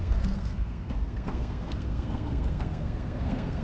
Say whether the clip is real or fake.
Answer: fake